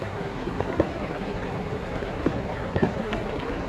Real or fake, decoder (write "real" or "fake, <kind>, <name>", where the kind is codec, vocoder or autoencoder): fake, codec, SNAC